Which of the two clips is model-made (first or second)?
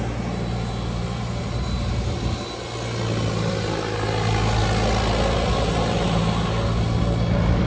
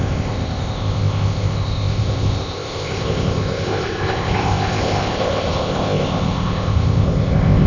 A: second